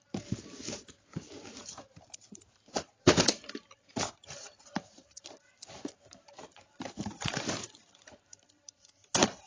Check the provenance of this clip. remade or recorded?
remade